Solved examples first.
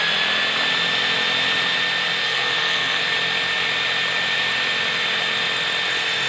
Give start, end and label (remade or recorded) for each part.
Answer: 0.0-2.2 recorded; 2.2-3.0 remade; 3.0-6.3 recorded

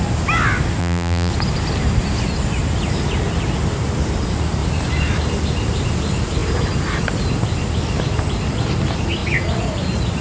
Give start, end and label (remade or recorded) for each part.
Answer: 0.0-0.8 recorded; 0.8-1.3 remade; 1.3-10.2 recorded

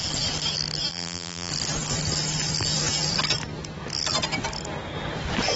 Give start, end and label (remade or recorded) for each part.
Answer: 0.0-0.9 recorded; 0.9-1.5 remade; 1.5-5.6 recorded

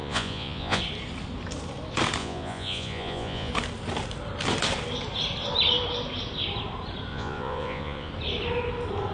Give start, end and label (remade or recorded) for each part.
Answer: 0.0-0.8 remade; 0.8-2.2 recorded; 2.2-3.5 remade; 3.5-7.1 recorded; 7.1-8.1 remade; 8.1-9.1 recorded

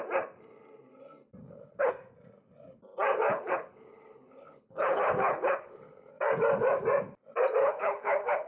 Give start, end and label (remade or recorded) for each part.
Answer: 0.0-1.4 recorded; 1.4-1.9 remade; 1.9-3.3 recorded; 3.3-6.1 remade; 6.1-7.6 recorded; 7.6-8.5 remade

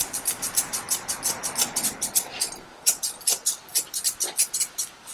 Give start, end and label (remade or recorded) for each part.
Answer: 0.0-3.7 recorded; 3.7-4.2 remade; 4.2-5.1 recorded

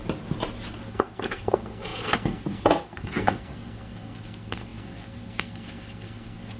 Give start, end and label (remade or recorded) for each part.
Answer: 0.0-0.9 recorded; 0.9-6.6 remade